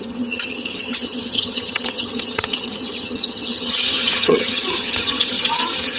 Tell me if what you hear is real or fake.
fake